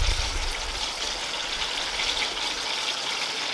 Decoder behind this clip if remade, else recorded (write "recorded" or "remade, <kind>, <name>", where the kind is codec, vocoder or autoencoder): recorded